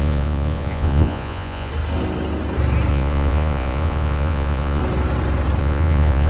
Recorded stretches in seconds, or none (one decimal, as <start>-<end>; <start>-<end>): 1.7-2.9; 4.8-5.6